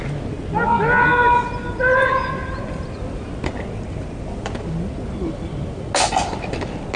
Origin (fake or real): real